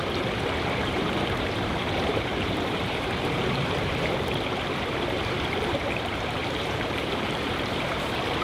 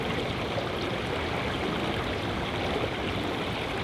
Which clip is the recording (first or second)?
second